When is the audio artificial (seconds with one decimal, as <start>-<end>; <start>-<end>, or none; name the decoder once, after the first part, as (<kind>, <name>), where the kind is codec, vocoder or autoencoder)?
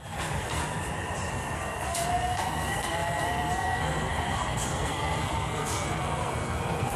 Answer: 0.0-0.6 (codec, SNAC); 1.3-7.0